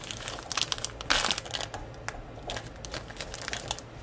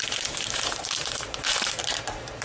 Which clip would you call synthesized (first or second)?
second